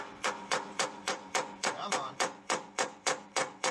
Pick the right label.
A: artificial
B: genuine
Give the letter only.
A